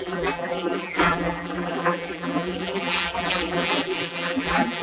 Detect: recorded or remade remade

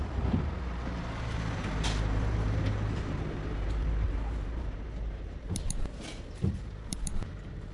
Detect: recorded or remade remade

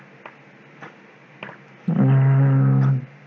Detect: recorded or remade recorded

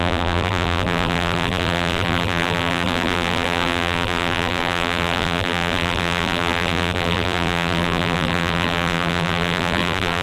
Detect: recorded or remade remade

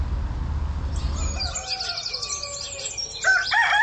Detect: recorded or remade recorded